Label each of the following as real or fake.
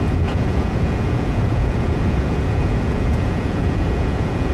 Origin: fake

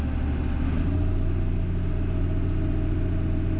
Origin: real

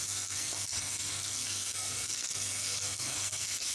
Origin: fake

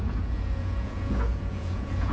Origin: fake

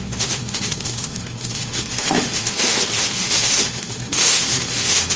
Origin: fake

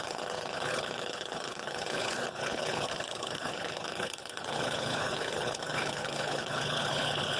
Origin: fake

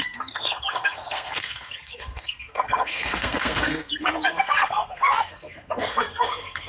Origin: fake